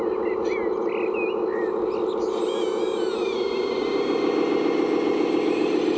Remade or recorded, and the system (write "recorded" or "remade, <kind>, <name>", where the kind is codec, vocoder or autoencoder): recorded